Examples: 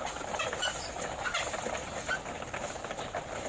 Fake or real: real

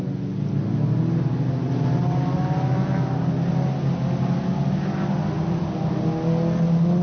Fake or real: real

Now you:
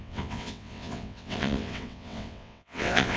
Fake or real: fake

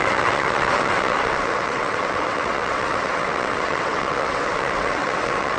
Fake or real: fake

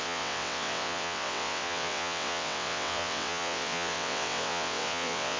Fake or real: fake